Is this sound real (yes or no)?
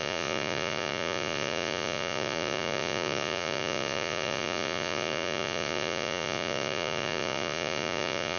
no